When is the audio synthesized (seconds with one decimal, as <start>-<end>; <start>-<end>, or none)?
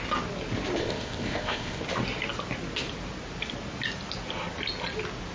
0.8-1.8